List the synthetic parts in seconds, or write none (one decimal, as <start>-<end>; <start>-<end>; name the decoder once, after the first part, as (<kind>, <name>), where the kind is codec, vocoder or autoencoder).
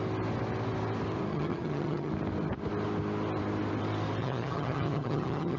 1.3-2.1 (vocoder, HiFi-GAN); 4.2-5.6